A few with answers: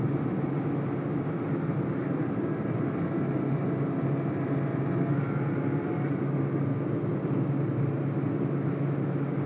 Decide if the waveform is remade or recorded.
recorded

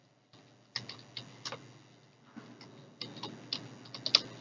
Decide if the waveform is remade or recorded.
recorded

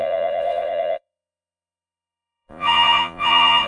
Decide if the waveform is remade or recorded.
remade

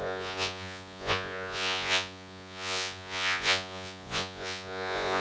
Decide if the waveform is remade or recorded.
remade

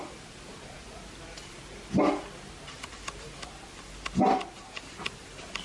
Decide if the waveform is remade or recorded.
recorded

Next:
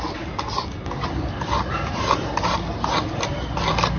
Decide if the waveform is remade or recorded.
recorded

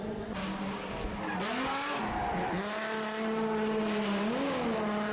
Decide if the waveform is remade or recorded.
recorded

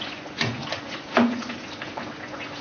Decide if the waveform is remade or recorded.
remade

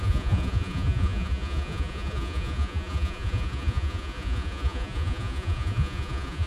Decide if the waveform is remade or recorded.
remade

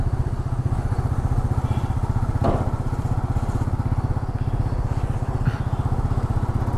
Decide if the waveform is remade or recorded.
recorded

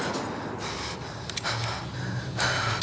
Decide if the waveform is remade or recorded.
recorded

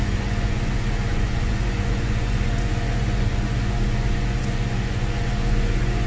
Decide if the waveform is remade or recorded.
remade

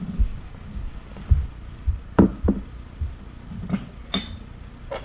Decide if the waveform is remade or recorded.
recorded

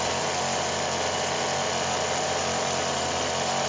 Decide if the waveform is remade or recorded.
recorded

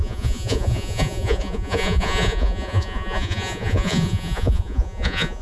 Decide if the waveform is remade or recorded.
remade